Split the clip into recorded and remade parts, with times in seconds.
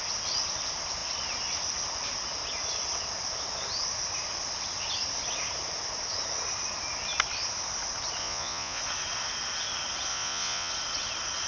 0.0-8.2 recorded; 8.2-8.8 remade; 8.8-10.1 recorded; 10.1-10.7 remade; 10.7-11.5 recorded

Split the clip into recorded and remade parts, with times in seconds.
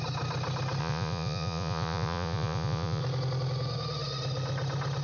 0.0-0.8 recorded; 0.8-3.0 remade; 3.0-5.0 recorded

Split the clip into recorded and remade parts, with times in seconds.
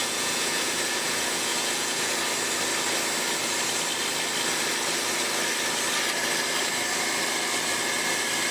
0.0-2.2 remade; 2.2-8.5 recorded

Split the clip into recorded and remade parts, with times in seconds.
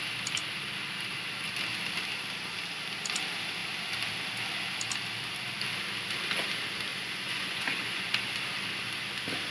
0.0-6.9 recorded; 6.9-8.2 remade; 8.2-9.5 recorded